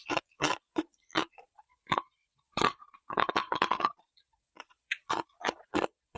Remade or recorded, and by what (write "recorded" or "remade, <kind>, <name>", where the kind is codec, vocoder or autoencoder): remade, vocoder, Vocos